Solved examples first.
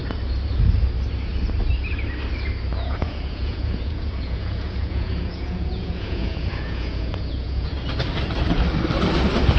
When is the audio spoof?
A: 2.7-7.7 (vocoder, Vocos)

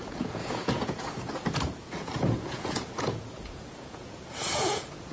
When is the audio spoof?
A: 0.0-5.1 (vocoder, Vocos)

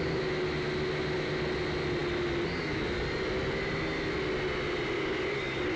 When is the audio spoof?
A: none

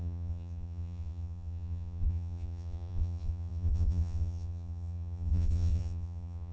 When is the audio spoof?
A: 0.0-6.5 (vocoder, Vocos)

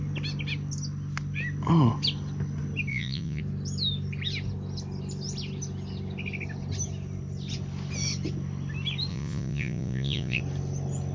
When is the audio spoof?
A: 2.9-3.4 (vocoder, Vocos); 9.1-10.4